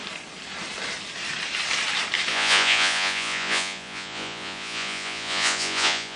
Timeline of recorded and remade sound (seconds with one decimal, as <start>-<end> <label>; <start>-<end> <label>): 0.0-2.3 recorded; 2.3-6.2 remade